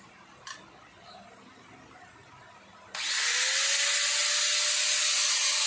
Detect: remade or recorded recorded